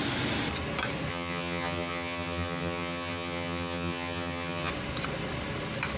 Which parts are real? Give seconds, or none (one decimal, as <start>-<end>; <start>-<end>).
0.0-1.1; 4.7-6.0